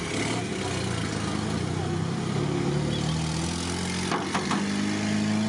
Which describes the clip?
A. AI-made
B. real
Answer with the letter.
B